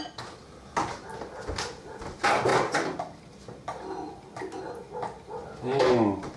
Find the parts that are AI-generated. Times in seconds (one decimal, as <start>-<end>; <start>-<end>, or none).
none